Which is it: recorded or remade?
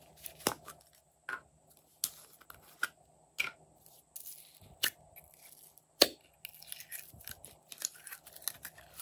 recorded